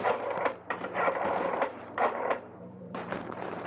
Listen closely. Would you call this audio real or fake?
fake